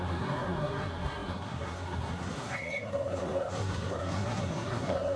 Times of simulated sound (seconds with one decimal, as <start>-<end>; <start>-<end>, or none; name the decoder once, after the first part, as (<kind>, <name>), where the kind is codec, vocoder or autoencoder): 0.0-5.2 (codec, SNAC)